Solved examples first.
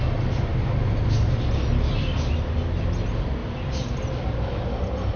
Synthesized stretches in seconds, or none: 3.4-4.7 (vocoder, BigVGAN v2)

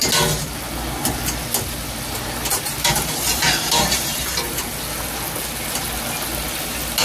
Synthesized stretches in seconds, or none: 2.5-4.6 (vocoder, BigVGAN v2)